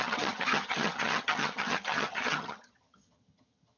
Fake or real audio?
fake